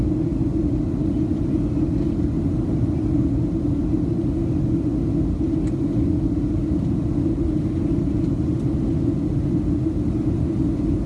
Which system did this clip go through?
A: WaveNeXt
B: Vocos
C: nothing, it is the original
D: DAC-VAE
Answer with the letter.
C